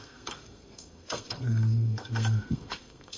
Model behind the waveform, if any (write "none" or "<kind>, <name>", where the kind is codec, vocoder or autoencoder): codec, SNAC